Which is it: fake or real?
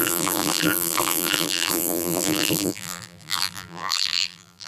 fake